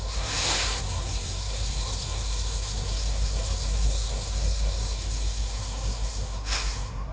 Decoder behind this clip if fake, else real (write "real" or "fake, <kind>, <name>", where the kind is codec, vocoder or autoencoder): fake, codec, SNAC